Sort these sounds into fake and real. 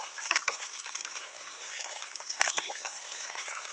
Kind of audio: fake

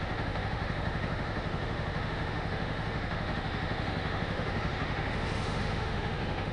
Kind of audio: fake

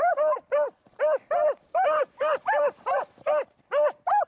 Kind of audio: fake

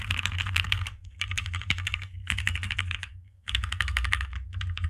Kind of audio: fake